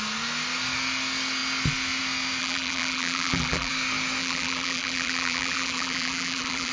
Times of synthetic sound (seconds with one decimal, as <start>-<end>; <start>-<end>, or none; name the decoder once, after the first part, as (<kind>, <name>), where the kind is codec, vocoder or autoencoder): 2.4-3.7 (vocoder, BigVGAN v2); 4.2-6.7